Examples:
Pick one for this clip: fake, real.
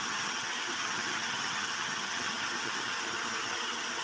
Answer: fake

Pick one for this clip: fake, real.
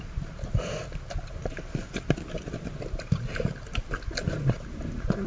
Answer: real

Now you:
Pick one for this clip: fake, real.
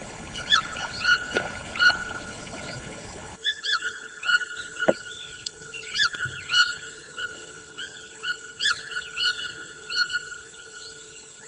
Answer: fake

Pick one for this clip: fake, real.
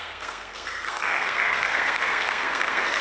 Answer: fake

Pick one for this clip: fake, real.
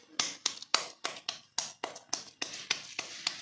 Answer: real